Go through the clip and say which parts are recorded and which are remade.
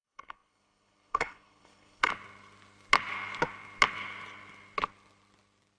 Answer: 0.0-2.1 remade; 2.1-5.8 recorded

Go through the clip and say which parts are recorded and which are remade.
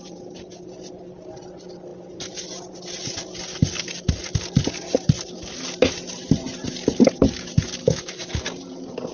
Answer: 0.0-7.8 recorded; 7.8-8.4 remade; 8.4-9.1 recorded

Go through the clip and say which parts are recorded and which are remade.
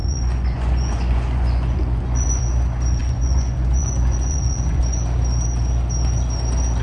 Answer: 0.0-2.4 remade; 2.4-3.0 recorded; 3.0-4.8 remade; 4.8-6.8 recorded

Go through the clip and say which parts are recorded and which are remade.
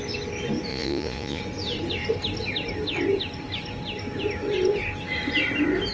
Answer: 0.0-0.7 recorded; 0.7-1.4 remade; 1.4-5.9 recorded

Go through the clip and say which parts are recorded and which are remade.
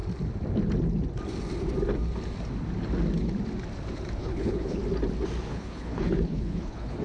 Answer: 0.0-4.2 recorded; 4.2-4.8 remade; 4.8-5.5 recorded; 5.5-7.0 remade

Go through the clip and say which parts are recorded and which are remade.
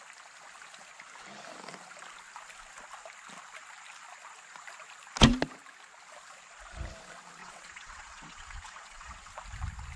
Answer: 0.0-7.4 recorded; 7.4-9.3 remade; 9.3-10.0 recorded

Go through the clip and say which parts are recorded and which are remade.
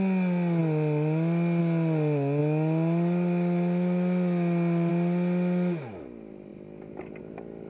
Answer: 0.0-7.7 recorded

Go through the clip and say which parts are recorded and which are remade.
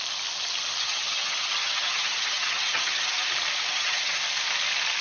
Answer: 0.0-0.8 recorded; 0.8-3.3 remade; 3.3-3.7 recorded; 3.7-4.2 remade; 4.2-5.0 recorded